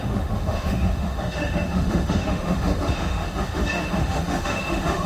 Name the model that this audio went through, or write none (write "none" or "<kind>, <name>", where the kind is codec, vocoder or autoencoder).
autoencoder, DAC-VAE